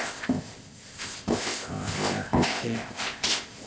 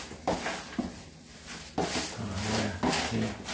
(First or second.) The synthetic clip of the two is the first